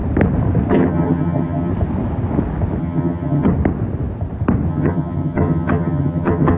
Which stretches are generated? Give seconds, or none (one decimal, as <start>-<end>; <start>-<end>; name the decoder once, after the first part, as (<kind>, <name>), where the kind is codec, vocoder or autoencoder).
0.7-1.7 (vocoder, HiFi-GAN); 2.8-3.5; 4.7-6.6

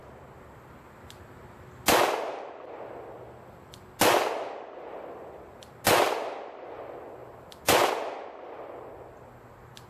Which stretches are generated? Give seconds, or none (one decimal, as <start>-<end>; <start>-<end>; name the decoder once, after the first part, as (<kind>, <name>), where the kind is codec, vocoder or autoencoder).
none

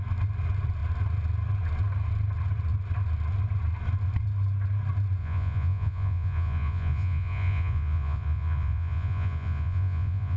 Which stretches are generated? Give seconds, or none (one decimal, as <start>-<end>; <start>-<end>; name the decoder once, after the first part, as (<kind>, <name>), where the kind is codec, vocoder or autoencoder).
5.2-10.4 (vocoder, Vocos)

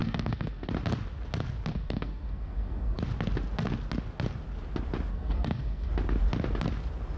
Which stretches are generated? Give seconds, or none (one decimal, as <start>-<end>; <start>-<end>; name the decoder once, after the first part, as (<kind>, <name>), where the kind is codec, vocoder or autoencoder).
0.0-0.7 (codec, SNAC); 1.7-3.0; 5.1-5.9

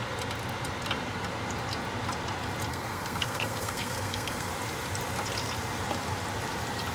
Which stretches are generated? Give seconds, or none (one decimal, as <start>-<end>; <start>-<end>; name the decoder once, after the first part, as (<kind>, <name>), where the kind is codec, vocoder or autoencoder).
2.7-4.5 (codec, SNAC)

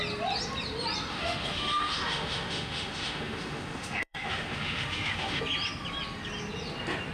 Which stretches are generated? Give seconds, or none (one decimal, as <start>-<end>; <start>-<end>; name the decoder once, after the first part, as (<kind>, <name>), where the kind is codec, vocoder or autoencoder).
1.1-5.4 (autoencoder, DAC-VAE)

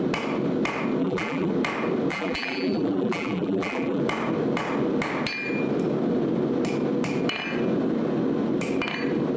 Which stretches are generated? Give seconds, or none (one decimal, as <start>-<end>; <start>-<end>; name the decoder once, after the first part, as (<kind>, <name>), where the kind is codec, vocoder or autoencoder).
1.0-1.5 (vocoder, BigVGAN v2); 2.1-4.0

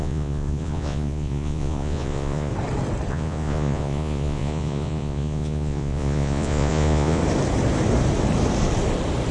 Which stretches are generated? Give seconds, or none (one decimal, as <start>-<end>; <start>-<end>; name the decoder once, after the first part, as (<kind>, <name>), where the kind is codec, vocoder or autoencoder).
0.0-2.5 (vocoder, Vocos); 3.1-7.2